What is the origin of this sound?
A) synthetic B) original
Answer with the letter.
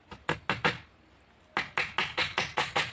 B